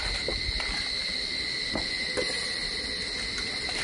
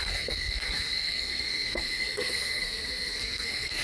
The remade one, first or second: second